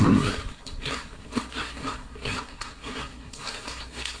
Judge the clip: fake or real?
fake